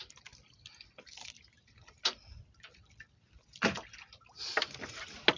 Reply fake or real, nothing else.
real